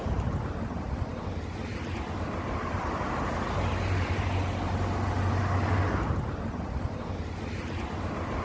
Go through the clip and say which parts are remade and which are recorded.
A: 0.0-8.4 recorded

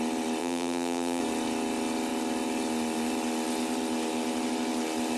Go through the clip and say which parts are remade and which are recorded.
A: 0.0-0.4 recorded; 0.4-1.2 remade; 1.2-5.2 recorded

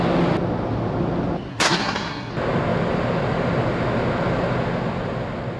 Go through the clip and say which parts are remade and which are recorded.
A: 0.0-1.5 recorded; 1.5-2.3 remade; 2.3-5.6 recorded